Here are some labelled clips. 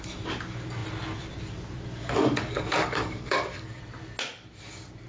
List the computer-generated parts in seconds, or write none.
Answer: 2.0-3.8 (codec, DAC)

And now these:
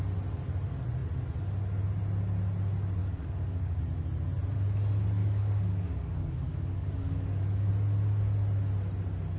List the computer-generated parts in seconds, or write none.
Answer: 3.0-3.8 (codec, DAC); 5.2-7.7

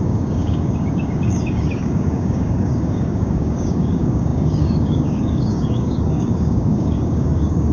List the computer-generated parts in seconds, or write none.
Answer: 0.0-7.7 (codec, DAC)

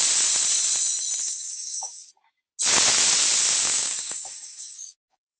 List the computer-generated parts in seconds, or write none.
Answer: 1.2-2.1 (codec, DAC); 3.6-5.4